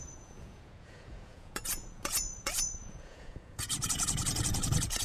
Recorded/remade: remade